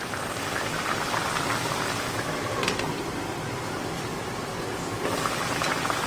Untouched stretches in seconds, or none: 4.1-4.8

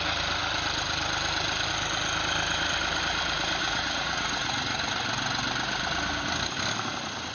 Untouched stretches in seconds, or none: 0.0-3.6; 4.9-7.3

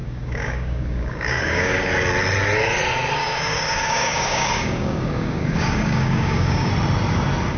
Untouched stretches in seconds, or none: 1.9-3.2; 6.7-7.6

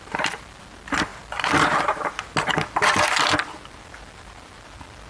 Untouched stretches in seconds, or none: 0.0-5.1